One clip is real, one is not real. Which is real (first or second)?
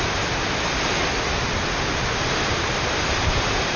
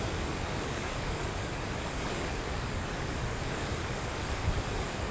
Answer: first